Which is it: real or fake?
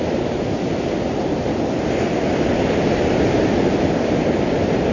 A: real